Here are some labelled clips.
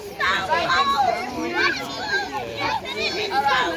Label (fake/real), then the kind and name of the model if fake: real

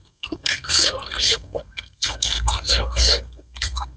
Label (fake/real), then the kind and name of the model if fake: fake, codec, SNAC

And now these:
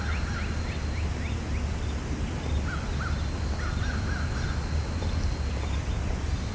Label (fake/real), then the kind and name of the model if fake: real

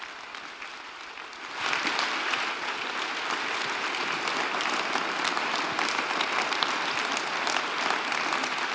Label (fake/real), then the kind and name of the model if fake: real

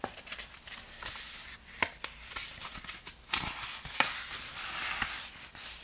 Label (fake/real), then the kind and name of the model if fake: real